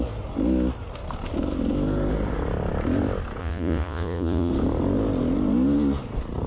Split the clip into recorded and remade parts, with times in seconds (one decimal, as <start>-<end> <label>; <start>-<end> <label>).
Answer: 0.0-3.4 recorded; 3.4-4.5 remade; 4.5-6.5 recorded